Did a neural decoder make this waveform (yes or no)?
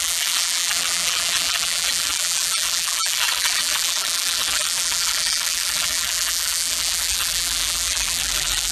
yes